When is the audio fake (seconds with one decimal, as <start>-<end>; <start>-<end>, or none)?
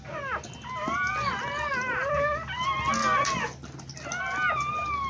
none